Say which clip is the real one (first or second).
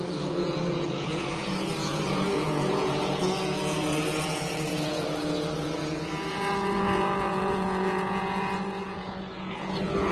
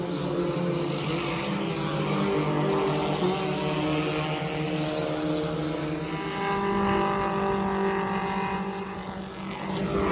second